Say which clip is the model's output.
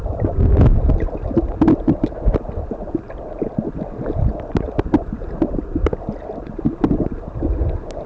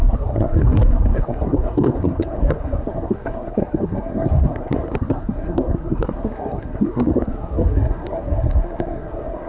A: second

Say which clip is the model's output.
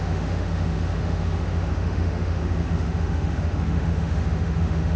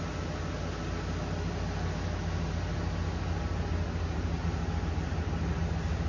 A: first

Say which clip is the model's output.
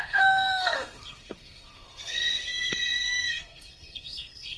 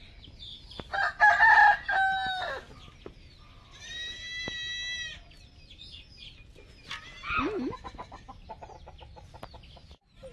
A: first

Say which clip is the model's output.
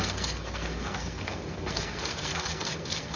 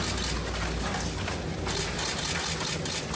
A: first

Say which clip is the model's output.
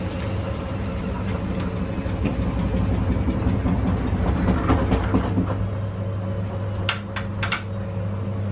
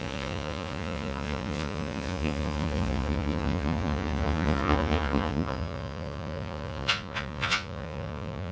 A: second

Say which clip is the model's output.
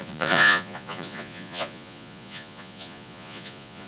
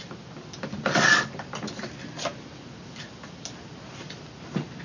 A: first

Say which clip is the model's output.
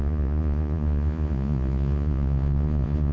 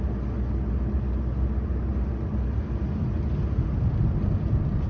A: first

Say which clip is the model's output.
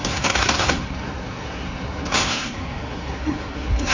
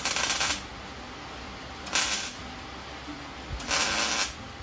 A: first